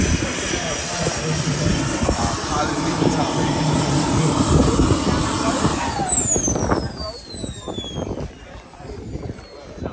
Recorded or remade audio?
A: recorded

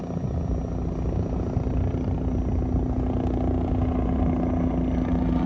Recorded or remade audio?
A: recorded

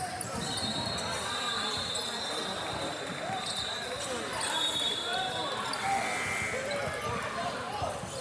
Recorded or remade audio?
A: recorded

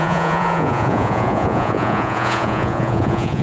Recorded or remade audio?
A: remade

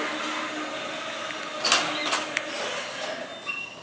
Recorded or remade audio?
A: recorded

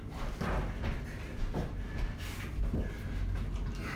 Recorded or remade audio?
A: recorded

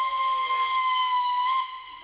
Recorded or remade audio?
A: recorded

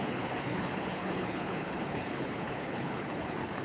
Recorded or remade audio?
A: remade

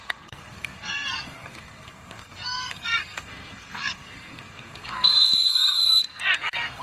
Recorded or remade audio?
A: remade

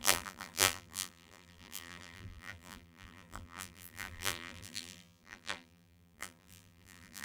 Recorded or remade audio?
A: remade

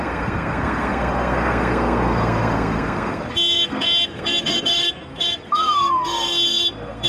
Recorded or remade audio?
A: remade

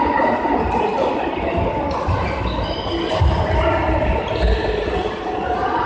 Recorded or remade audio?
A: recorded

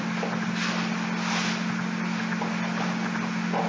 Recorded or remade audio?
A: recorded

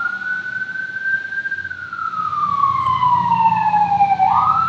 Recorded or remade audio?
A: recorded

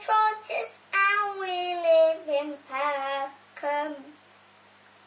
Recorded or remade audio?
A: recorded